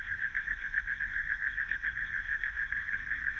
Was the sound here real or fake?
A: fake